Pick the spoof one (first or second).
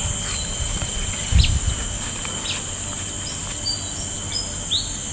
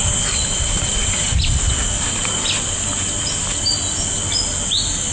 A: second